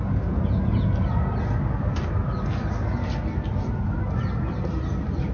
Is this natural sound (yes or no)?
yes